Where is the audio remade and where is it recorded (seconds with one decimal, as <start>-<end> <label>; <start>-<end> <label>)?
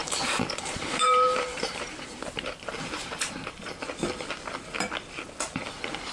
0.0-3.7 remade; 3.7-6.1 recorded